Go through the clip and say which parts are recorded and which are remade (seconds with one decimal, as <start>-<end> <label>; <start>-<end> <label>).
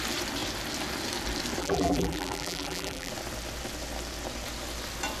0.0-1.6 recorded; 1.6-3.1 remade; 3.1-5.2 recorded